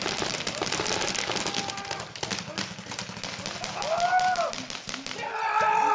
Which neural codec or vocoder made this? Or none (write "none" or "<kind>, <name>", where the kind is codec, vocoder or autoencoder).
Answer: none